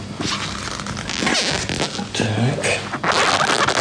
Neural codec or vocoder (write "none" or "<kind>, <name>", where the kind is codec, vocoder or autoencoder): none